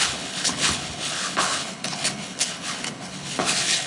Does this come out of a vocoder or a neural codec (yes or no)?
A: yes